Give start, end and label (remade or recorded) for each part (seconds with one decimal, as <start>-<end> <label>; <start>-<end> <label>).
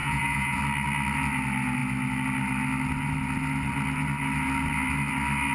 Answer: 0.0-0.6 remade; 0.6-5.5 recorded